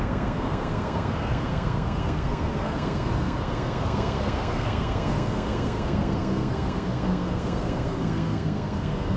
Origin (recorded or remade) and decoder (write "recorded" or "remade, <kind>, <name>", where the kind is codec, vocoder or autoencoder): remade, codec, SNAC